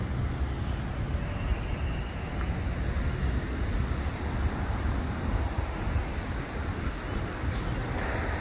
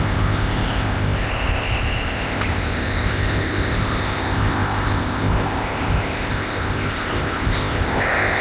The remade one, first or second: second